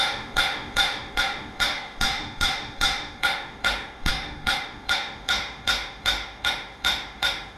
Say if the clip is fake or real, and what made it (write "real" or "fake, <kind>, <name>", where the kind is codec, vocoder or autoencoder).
fake, autoencoder, DAC-VAE